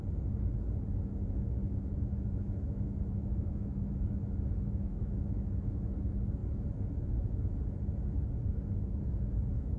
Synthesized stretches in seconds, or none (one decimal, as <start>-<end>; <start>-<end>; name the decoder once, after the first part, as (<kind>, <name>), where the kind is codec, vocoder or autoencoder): 1.6-5.9 (autoencoder, DAC-VAE)